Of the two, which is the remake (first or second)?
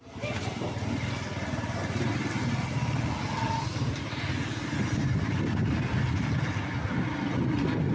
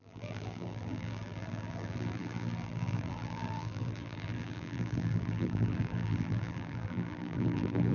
second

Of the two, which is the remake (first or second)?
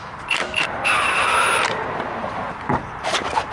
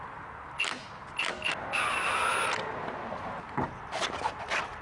first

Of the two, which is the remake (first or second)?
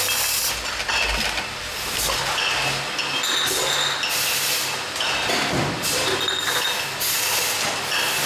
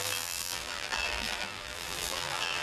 second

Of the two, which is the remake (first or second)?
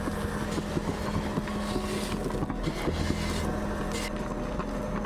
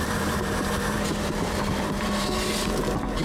second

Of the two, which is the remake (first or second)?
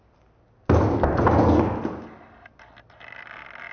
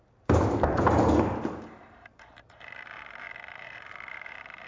second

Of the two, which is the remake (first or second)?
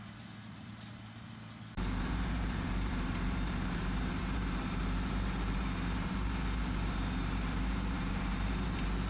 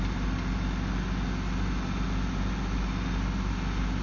first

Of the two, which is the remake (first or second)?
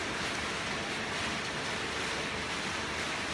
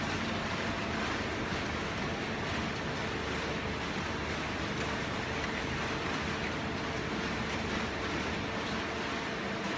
first